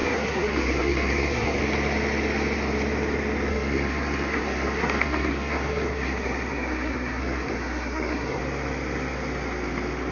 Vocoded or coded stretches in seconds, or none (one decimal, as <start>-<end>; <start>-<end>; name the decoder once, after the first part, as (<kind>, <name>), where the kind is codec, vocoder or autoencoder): 0.0-1.6 (codec, SNAC); 3.5-8.4

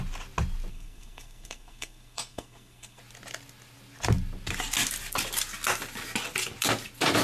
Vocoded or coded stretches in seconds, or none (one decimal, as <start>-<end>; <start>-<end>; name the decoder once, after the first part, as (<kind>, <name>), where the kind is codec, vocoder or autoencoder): 0.7-3.0 (codec, SNAC)

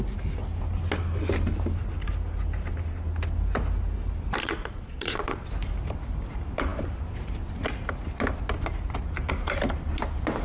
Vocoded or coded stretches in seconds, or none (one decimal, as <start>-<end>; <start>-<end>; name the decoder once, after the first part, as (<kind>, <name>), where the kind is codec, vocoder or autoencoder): 4.4-5.4 (vocoder, Vocos)

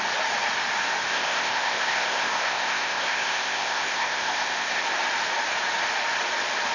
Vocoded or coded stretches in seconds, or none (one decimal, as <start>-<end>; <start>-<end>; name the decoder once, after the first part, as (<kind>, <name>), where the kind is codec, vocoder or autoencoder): 1.1-4.8 (codec, ZipCodec)

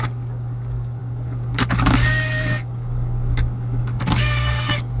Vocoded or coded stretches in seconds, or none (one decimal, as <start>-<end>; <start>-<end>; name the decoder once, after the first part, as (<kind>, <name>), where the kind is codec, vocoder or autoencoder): 0.0-5.0 (codec, DAC)

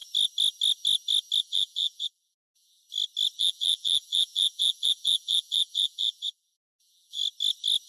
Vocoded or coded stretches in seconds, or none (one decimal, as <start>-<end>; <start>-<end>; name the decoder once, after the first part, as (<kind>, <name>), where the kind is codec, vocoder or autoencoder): 1.4-2.8 (vocoder, BigVGAN v2); 3.4-7.2